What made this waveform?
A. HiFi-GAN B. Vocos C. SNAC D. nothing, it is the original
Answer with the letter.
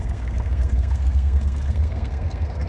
C